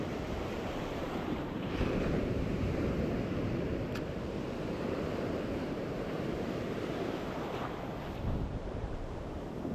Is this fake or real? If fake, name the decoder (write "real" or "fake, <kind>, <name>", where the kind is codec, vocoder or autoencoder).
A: fake, vocoder, BigVGAN v2